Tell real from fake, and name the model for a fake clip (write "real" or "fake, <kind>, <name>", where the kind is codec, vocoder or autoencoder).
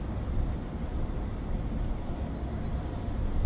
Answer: real